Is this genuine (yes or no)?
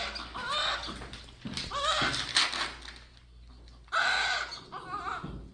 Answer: yes